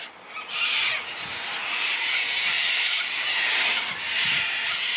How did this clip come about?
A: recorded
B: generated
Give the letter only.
A